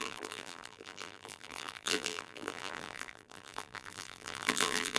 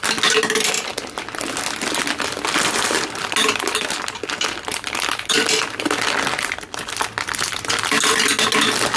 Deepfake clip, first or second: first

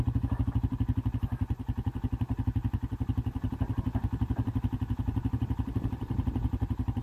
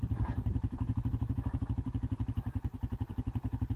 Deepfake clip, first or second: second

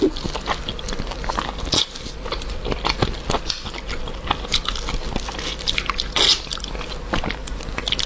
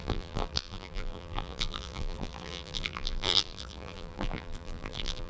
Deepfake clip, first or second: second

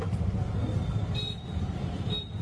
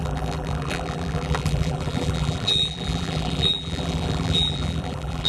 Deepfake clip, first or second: second